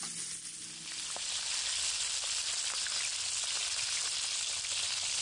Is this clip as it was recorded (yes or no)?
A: yes